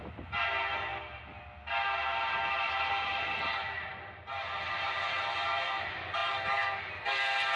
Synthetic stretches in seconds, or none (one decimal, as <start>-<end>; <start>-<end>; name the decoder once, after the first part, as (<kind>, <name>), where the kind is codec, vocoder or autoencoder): 0.0-0.9 (vocoder, BigVGAN v2); 2.5-7.6